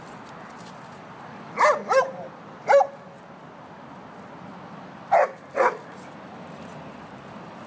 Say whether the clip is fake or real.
real